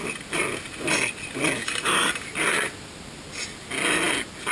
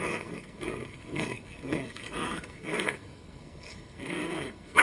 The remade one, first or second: second